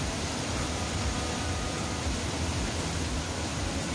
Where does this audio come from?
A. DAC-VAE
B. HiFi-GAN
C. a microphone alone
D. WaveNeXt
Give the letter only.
C